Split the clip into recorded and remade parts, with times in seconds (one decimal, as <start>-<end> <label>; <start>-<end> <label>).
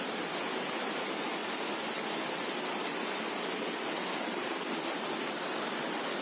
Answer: 0.0-6.2 recorded